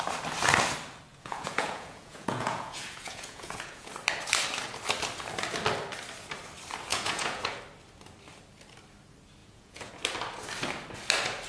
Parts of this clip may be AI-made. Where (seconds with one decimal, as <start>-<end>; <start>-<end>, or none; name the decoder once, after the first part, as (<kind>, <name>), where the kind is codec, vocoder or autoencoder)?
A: 1.1-3.9 (vocoder, Vocos); 6.9-7.6; 9.4-9.9